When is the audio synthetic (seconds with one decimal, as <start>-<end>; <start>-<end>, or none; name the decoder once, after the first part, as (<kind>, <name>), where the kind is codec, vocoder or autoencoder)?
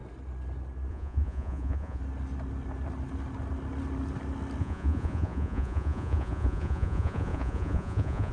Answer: 0.9-2.0 (vocoder, Vocos); 4.6-8.3